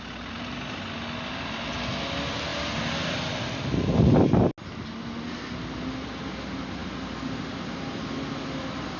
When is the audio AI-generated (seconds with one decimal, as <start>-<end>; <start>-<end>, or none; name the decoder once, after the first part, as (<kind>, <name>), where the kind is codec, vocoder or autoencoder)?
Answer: none